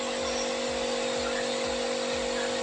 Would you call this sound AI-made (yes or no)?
no